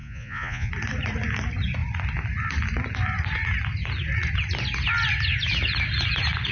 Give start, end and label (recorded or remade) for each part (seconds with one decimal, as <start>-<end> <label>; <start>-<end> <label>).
0.0-0.7 remade; 0.7-6.5 recorded